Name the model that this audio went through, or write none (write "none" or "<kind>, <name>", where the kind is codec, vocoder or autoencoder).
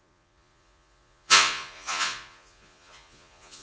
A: vocoder, Vocos